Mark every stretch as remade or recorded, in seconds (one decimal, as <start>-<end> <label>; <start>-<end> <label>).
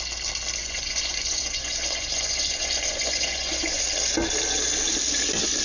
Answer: 0.0-0.6 recorded; 0.6-3.8 remade; 3.8-5.6 recorded